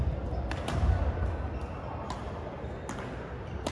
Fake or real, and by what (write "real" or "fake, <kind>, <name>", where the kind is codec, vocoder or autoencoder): real